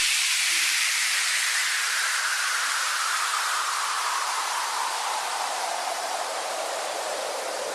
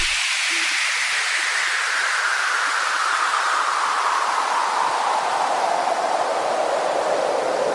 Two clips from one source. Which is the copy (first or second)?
first